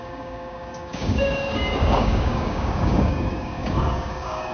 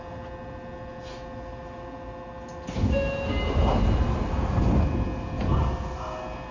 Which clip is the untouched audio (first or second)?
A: second